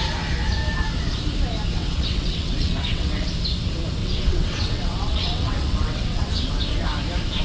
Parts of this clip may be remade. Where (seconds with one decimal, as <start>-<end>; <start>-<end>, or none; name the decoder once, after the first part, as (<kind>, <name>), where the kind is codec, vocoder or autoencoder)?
1.8-3.3 (vocoder, WaveNeXt); 4.0-6.5